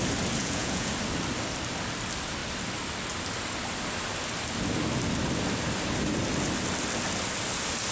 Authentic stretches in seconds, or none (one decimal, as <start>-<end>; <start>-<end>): 0.0-0.4; 0.9-7.9